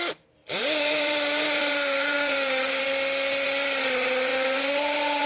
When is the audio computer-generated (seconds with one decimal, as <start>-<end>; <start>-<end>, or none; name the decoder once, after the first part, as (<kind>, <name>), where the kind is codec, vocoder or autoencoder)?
0.4-2.8 (vocoder, BigVGAN v2); 4.3-5.3

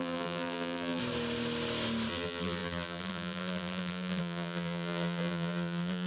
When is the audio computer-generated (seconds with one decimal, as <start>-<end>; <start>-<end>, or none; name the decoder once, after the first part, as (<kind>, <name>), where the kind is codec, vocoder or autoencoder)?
0.0-1.0 (vocoder, BigVGAN v2); 2.1-6.1

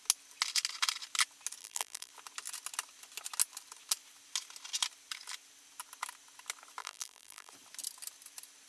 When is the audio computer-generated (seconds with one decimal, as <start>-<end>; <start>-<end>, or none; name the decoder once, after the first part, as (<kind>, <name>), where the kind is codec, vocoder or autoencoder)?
1.6-2.1 (vocoder, BigVGAN v2); 6.8-7.5

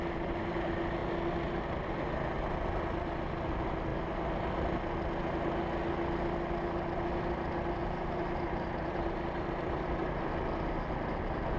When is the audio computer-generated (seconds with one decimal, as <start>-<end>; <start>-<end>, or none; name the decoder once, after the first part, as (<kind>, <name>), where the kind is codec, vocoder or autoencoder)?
7.8-10.1 (vocoder, BigVGAN v2)

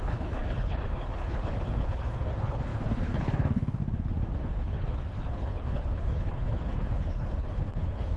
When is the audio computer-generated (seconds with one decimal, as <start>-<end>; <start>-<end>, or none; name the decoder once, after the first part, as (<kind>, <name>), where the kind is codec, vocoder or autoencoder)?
0.0-3.8 (codec, HILCodec); 4.4-8.2

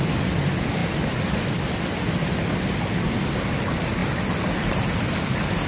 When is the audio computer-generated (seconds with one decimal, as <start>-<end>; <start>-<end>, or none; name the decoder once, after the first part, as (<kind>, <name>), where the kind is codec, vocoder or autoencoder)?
none